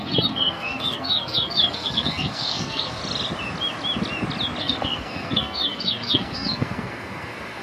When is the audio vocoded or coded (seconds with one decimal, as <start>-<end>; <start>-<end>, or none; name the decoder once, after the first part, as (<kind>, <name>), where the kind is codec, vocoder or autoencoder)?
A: 0.0-3.0 (codec, SNAC); 4.6-7.6